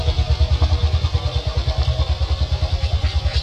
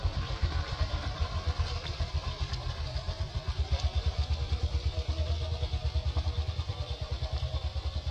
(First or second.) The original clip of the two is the first